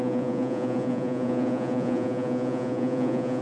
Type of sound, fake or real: fake